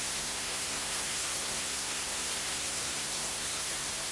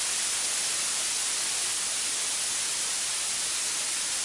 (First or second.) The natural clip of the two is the second